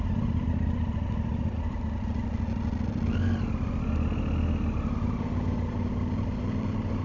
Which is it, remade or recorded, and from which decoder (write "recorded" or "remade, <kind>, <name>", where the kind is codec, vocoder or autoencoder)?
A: recorded